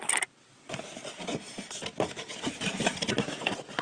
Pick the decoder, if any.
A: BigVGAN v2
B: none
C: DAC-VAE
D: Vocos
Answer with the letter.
B